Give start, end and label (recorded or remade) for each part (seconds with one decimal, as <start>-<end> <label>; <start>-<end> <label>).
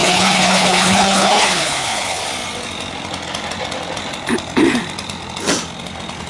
0.0-2.2 remade; 2.2-6.3 recorded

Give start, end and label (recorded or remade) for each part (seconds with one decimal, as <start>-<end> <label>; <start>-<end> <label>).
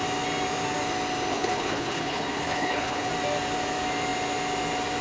0.0-1.3 recorded; 1.3-3.1 remade; 3.1-5.0 recorded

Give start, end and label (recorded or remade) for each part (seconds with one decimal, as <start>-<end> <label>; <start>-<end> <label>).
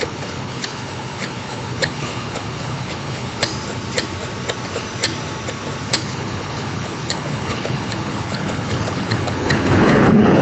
0.0-3.5 remade; 3.5-5.9 recorded; 5.9-10.4 remade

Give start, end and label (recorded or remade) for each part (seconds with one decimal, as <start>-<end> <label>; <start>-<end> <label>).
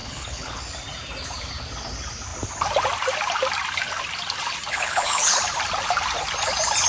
0.0-0.6 remade; 0.6-4.7 recorded; 4.7-5.4 remade; 5.4-6.9 recorded